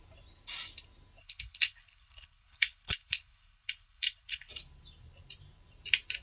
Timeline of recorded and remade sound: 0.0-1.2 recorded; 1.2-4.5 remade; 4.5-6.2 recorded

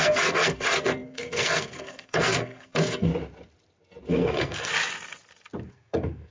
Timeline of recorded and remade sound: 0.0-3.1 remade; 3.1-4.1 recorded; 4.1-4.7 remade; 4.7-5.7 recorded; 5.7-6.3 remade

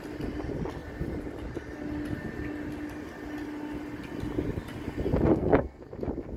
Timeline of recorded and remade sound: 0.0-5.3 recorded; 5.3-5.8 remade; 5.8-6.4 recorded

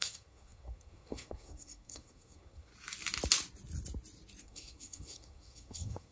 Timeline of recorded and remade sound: 0.0-2.7 remade; 2.7-4.4 recorded; 4.4-6.1 remade